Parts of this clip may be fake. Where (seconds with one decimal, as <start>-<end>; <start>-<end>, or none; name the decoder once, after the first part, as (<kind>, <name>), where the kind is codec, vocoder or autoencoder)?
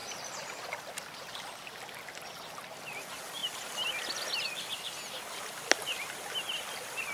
none